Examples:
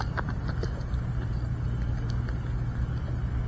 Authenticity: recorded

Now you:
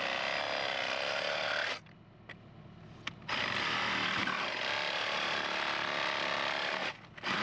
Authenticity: recorded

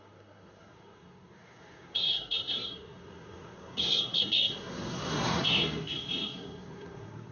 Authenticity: remade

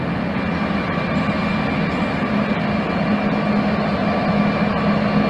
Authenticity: recorded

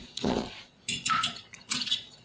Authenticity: remade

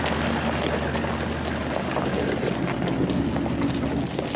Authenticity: recorded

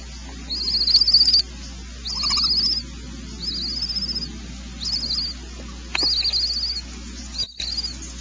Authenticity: recorded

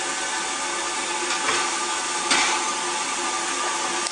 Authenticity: recorded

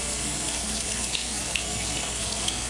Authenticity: remade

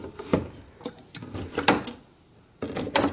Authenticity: recorded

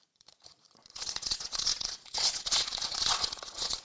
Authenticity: remade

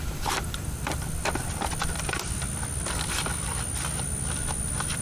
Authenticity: recorded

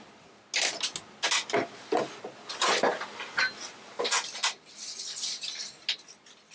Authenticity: recorded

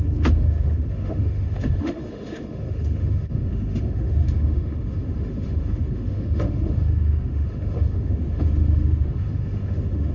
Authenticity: remade